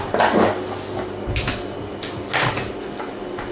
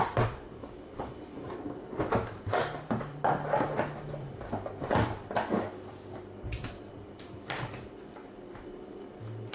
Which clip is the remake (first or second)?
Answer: second